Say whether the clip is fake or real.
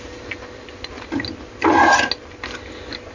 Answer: real